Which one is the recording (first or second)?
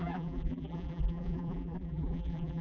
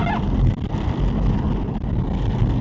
second